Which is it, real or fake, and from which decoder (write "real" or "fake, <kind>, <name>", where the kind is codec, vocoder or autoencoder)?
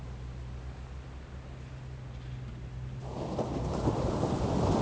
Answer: real